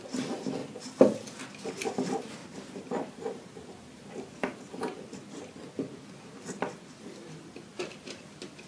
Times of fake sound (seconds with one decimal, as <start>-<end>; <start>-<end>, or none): 2.4-4.1